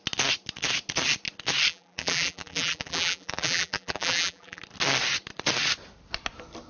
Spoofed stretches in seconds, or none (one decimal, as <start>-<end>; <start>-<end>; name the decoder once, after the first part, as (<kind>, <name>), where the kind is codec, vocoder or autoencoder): 1.7-4.6 (vocoder, BigVGAN v2)